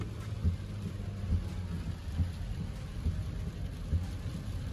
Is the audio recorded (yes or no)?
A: yes